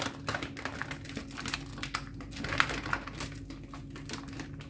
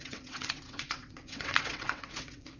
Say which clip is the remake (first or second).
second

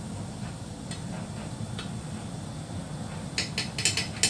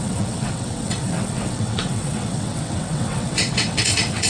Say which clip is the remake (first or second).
second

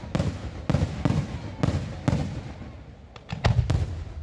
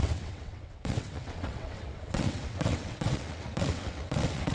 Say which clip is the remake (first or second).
second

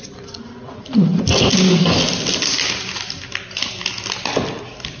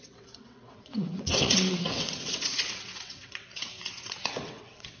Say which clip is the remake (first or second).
second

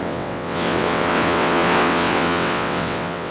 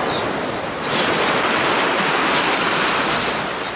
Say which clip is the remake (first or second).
first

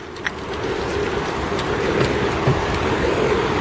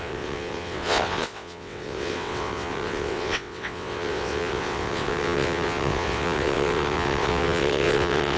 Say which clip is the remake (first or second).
second